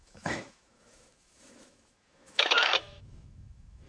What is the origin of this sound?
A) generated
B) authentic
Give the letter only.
A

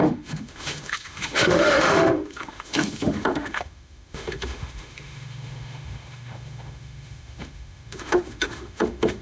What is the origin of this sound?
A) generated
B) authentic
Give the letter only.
A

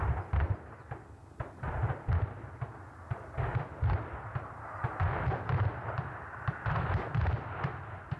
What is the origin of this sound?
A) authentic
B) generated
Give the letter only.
A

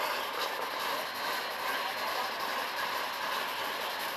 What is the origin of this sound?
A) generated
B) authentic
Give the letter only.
B